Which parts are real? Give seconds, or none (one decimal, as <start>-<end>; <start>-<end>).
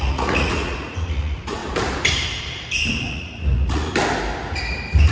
1.6-3.1; 3.9-5.1